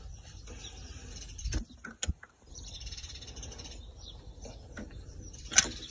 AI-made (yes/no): no